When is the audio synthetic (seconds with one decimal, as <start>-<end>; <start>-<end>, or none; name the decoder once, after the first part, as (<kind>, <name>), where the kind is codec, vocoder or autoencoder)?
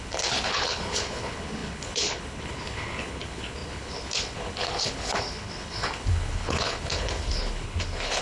0.0-8.2 (codec, HILCodec)